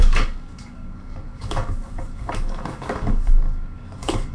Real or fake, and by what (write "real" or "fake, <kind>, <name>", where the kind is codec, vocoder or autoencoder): fake, codec, DAC